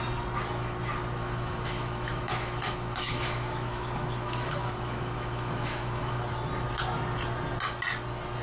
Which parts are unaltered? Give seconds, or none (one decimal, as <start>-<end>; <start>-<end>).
0.0-1.2; 6.2-8.4